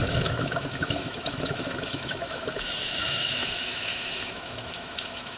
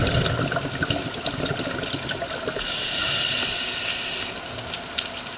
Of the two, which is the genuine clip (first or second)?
second